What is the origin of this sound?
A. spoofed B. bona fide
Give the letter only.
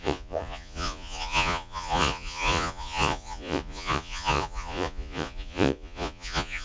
A